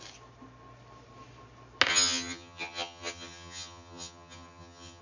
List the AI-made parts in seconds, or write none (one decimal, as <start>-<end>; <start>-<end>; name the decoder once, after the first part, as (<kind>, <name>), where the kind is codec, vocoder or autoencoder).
1.9-5.0 (vocoder, HiFi-GAN)

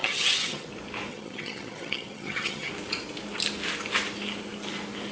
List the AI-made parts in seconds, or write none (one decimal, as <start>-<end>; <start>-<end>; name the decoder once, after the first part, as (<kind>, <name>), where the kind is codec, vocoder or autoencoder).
0.0-0.7 (vocoder, HiFi-GAN); 1.1-2.7

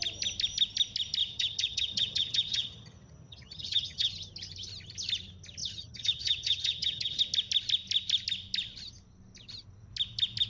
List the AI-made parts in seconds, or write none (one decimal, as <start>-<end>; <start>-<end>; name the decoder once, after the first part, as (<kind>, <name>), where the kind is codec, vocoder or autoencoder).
1.2-4.1 (vocoder, HiFi-GAN); 5.6-7.2

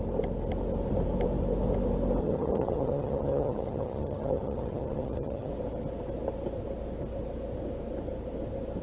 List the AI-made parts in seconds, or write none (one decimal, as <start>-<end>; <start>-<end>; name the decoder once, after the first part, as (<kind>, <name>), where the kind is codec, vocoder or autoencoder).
2.2-5.5 (vocoder, HiFi-GAN)

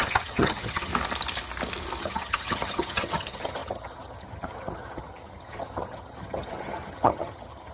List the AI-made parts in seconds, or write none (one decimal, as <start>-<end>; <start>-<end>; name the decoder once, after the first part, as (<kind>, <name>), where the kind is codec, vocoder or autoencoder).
0.0-0.9 (vocoder, HiFi-GAN); 2.0-7.7

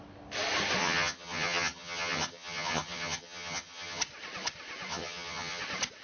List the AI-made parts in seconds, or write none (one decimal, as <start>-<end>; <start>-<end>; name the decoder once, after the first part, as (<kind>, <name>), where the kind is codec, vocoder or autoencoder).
0.8-4.0 (vocoder, HiFi-GAN); 4.9-5.6